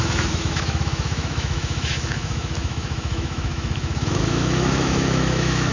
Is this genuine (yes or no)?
no